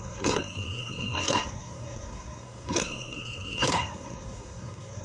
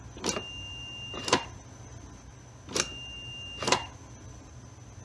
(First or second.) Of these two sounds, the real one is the second